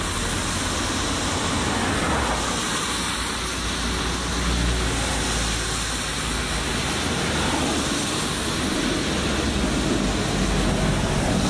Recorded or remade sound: recorded